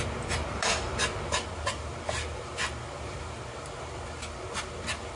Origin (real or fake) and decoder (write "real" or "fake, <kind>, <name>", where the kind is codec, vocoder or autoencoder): real